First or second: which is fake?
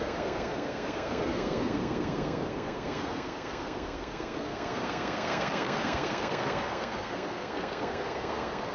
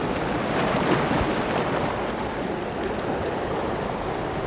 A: first